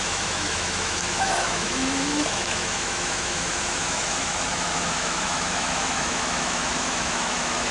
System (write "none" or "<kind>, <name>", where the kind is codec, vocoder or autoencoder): autoencoder, DAC-VAE